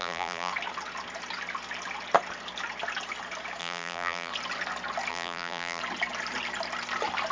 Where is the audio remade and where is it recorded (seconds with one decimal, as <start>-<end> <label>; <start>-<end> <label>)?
0.0-0.5 remade; 0.5-3.6 recorded; 3.6-4.3 remade; 4.3-5.1 recorded; 5.1-5.8 remade; 5.8-7.3 recorded